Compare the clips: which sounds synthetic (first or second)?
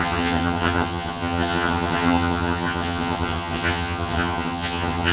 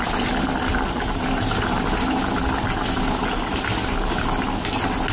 first